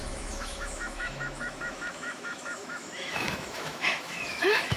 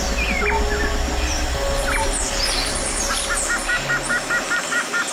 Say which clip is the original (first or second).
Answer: second